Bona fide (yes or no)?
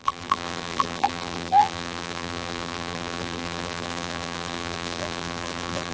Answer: no